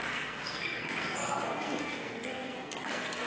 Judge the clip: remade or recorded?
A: remade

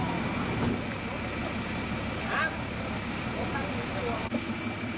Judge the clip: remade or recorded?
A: recorded